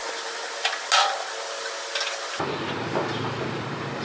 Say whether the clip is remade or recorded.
recorded